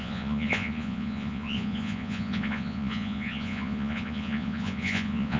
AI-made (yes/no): yes